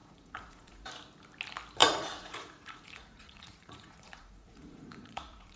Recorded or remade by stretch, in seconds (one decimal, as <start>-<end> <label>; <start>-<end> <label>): 0.0-0.9 remade; 0.9-1.8 recorded; 1.8-5.6 remade